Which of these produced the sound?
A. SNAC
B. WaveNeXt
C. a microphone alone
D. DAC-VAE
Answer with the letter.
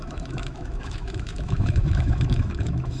D